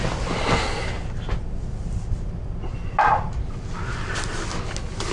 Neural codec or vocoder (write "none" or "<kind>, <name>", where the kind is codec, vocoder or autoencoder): none